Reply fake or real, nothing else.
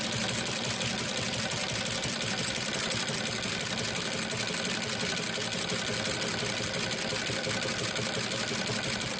real